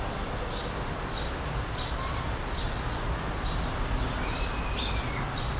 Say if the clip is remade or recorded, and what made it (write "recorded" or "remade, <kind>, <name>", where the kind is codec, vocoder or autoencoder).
recorded